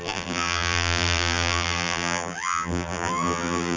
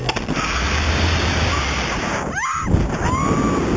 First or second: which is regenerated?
first